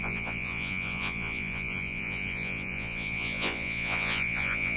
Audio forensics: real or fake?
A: fake